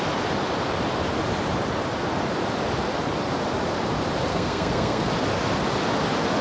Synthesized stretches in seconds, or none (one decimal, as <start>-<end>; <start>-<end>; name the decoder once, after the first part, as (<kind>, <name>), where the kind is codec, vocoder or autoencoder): 4.3-5.1 (codec, SNAC)